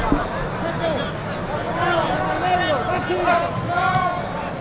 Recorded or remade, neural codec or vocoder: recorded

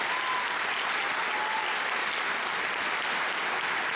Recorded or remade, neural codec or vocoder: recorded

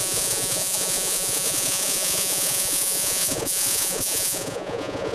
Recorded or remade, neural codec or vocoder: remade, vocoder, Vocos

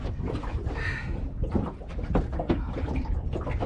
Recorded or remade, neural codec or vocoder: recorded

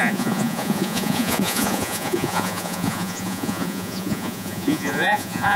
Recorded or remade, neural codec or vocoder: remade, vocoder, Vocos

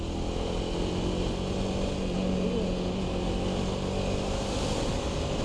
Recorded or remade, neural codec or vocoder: recorded